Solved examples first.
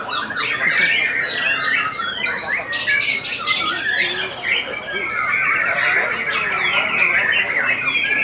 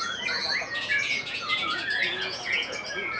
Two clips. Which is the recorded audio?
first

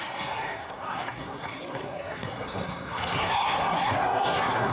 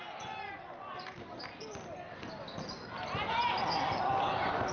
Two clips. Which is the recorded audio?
second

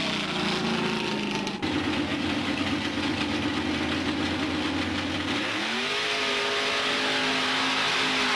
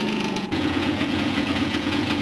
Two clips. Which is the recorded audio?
first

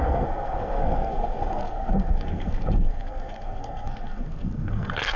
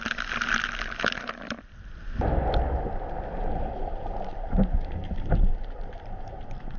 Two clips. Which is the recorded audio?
second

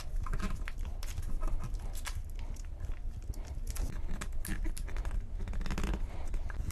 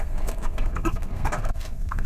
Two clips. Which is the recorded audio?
first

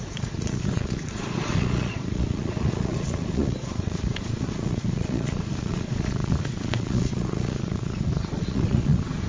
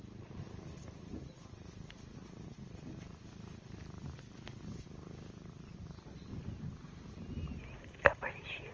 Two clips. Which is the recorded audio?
second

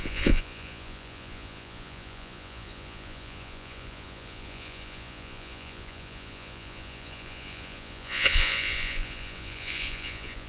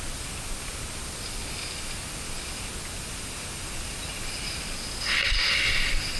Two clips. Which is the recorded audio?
second